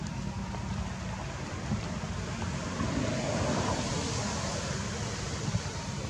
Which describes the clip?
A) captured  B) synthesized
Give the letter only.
A